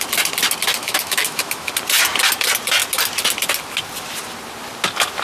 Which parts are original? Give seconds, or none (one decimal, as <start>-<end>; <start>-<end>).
0.0-0.8; 1.7-5.2